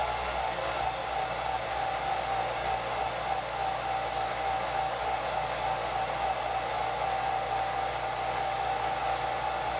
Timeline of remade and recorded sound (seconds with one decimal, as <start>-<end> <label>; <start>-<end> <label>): 0.0-1.0 recorded; 1.0-2.1 remade; 2.1-9.8 recorded